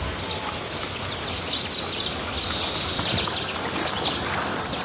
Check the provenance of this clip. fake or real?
real